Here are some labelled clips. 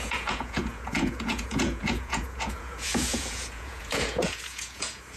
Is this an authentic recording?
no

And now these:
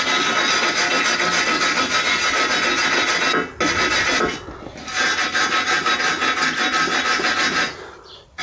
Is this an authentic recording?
yes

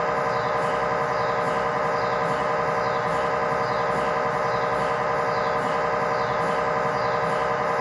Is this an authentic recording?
yes